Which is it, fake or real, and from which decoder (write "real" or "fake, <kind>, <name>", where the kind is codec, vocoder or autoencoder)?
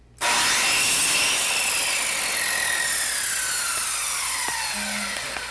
real